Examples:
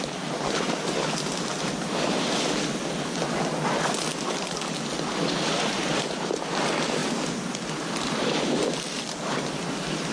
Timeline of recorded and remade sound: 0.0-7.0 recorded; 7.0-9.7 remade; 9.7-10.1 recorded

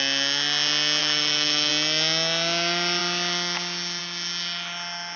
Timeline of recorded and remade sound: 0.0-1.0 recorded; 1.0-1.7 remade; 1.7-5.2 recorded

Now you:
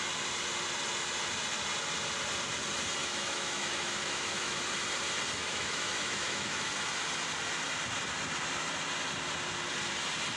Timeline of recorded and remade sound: 0.0-3.0 recorded; 3.0-4.6 remade; 4.6-5.4 recorded; 5.4-6.7 remade; 6.7-10.4 recorded